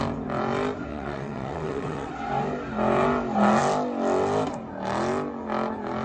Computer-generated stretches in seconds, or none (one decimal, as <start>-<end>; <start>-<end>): 0.9-2.1